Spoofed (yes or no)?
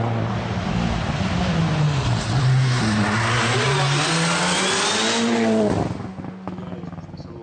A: no